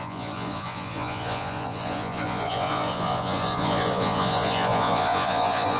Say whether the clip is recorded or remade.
remade